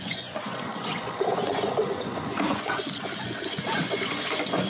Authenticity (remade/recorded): remade